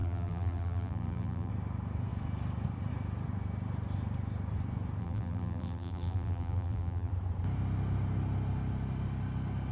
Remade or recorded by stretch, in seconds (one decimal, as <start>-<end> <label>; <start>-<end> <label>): 0.0-1.5 remade; 1.5-5.0 recorded; 5.0-7.1 remade; 7.1-9.7 recorded